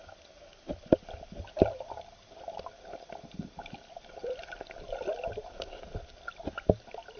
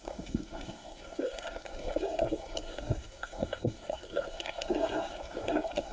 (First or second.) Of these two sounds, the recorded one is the first